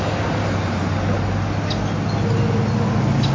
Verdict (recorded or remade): recorded